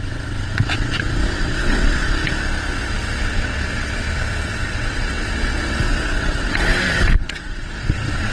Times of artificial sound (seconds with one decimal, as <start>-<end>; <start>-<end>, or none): 0.0-2.0; 2.7-8.3